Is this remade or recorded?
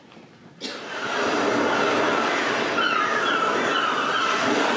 recorded